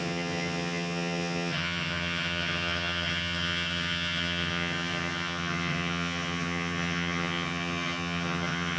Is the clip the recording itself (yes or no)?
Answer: no